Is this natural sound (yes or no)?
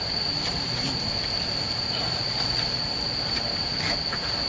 no